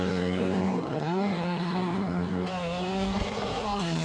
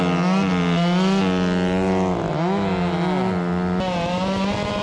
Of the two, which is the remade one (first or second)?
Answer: first